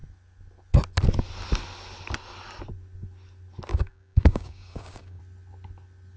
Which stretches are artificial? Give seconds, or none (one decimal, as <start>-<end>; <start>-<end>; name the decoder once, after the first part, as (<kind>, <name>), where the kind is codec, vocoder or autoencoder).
3.7-5.2 (codec, DAC)